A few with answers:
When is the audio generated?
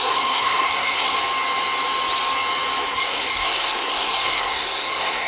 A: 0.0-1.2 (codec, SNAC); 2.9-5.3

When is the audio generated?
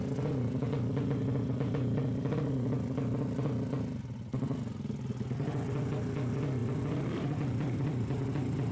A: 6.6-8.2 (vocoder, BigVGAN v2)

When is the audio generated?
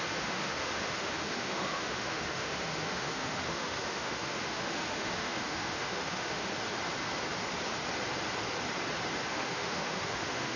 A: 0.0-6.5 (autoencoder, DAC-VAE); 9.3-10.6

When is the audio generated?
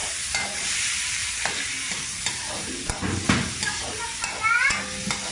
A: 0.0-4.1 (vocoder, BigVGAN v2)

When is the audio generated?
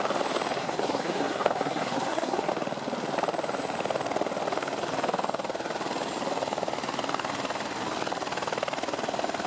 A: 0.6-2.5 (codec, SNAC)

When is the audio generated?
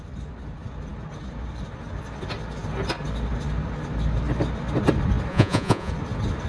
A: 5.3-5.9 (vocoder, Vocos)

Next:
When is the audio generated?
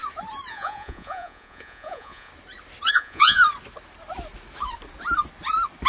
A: 0.5-2.3 (vocoder, Vocos); 2.9-3.4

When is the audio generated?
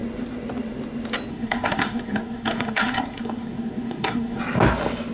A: 1.3-4.4 (codec, SNAC)